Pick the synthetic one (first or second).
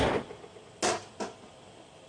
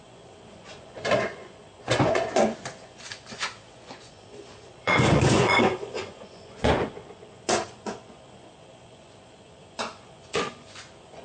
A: second